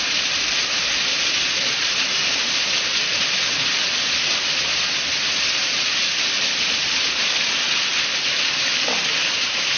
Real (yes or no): yes